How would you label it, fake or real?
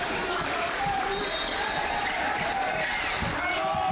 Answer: real